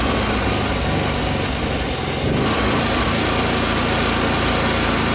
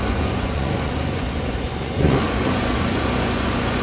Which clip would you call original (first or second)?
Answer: first